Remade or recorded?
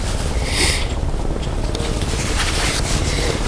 remade